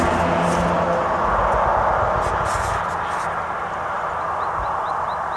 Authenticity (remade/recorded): recorded